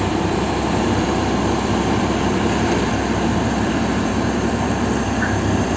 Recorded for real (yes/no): no